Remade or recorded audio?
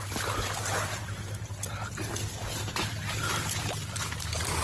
recorded